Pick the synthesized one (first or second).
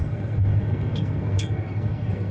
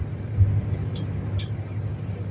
first